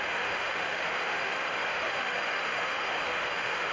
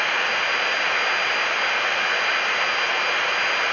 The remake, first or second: first